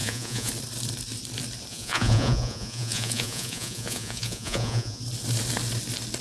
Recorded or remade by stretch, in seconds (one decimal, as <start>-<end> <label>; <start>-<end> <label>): 0.0-0.5 remade; 0.5-1.7 recorded; 1.7-5.0 remade; 5.0-6.2 recorded